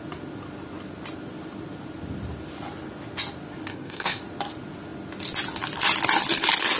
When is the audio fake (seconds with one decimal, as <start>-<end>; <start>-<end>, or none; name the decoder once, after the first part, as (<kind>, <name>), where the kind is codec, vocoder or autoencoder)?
3.7-4.2 (codec, SNAC)